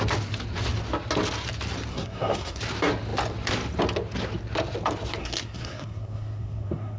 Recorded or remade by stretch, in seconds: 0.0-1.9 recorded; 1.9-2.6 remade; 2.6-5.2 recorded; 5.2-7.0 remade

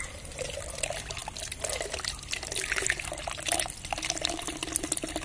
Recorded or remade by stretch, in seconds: 0.0-5.2 recorded

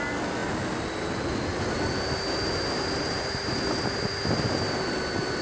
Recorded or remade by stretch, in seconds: 0.0-5.4 recorded

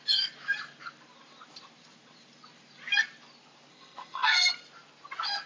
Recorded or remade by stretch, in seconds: 0.0-3.7 recorded; 3.7-4.5 remade; 4.5-5.5 recorded

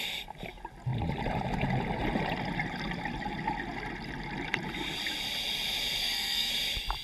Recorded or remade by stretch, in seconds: 0.0-6.0 recorded; 6.0-6.5 remade; 6.5-7.0 recorded

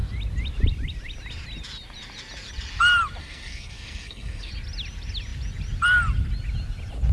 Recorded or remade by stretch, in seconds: 0.0-3.2 recorded; 3.2-4.5 remade; 4.5-7.1 recorded

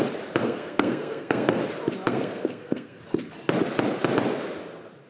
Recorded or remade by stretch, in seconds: 0.0-0.4 recorded; 0.4-1.6 remade; 1.6-2.1 recorded; 2.1-3.0 remade; 3.0-5.1 recorded